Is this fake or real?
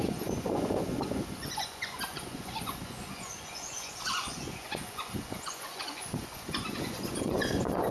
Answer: fake